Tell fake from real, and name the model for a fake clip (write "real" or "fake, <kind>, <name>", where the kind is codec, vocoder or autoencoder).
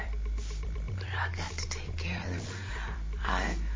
fake, vocoder, BigVGAN v2